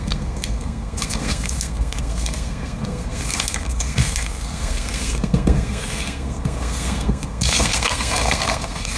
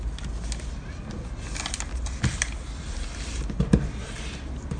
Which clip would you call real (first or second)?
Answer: second